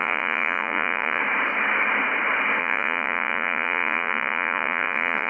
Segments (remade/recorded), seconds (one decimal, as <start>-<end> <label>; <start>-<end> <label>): 0.0-1.2 remade; 1.2-2.6 recorded; 2.6-5.3 remade

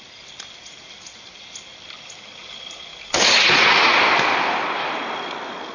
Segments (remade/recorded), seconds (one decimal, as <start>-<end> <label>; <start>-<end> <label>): 0.0-2.4 recorded; 2.4-4.0 remade; 4.0-5.7 recorded

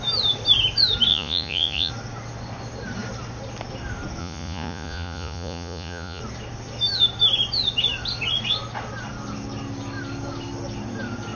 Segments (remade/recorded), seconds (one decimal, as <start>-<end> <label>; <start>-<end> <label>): 0.0-1.1 recorded; 1.1-1.9 remade; 1.9-4.2 recorded; 4.2-6.2 remade; 6.2-11.4 recorded

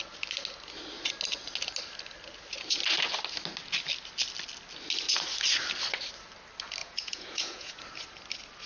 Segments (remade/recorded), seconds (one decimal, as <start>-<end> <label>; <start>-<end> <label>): 0.0-6.8 recorded; 6.8-7.8 remade; 7.8-8.7 recorded

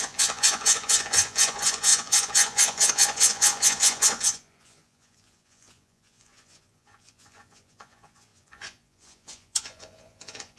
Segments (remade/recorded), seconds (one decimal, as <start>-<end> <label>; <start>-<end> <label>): 0.0-10.6 remade